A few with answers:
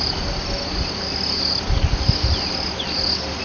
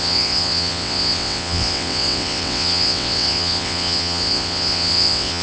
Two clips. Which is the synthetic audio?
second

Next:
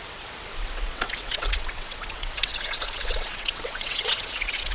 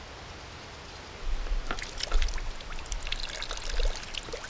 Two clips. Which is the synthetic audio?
first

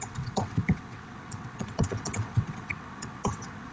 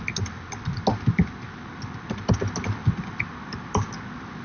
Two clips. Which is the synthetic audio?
first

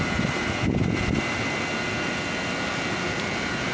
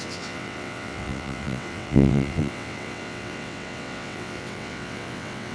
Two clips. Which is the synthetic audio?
second